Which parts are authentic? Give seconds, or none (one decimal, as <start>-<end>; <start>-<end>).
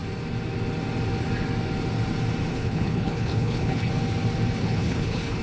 0.0-2.5; 3.9-4.6